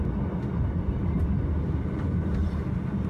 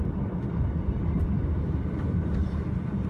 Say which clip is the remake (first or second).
second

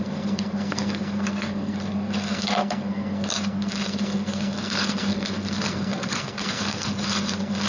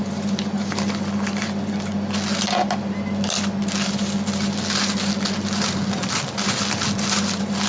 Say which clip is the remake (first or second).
first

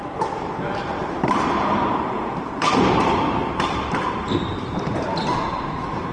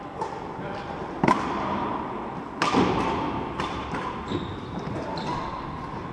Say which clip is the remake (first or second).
first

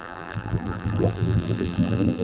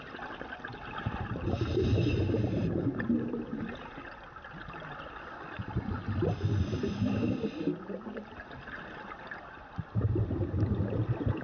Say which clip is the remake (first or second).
first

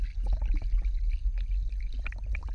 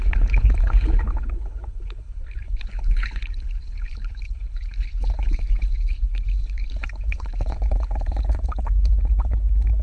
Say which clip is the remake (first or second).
second